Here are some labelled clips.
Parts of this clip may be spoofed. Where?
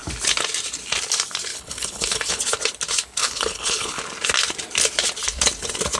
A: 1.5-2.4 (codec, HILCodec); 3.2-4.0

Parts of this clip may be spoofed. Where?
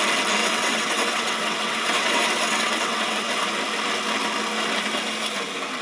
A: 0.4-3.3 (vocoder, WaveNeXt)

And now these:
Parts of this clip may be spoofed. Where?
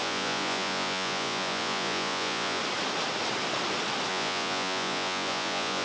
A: 0.0-2.6 (vocoder, Vocos); 4.1-5.8